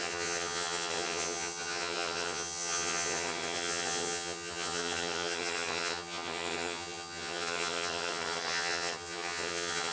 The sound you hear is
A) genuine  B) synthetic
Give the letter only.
B